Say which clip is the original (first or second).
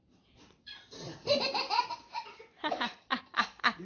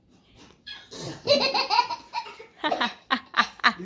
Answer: second